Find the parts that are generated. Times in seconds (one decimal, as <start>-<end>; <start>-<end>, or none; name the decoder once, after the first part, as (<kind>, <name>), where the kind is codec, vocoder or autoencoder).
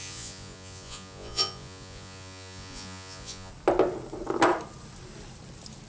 0.0-3.5 (vocoder, Vocos)